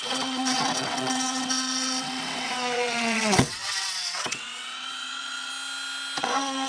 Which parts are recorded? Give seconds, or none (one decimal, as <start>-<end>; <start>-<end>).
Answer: 5.5-6.2